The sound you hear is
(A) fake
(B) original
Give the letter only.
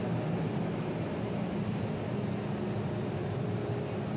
B